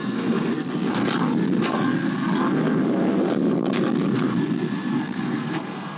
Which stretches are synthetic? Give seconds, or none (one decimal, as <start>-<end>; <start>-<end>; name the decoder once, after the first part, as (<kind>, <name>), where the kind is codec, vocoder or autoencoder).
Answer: 0.0-1.0 (codec, SNAC); 2.5-3.3; 5.0-6.0